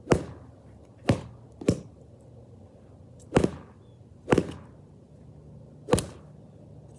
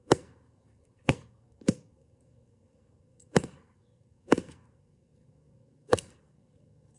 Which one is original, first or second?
first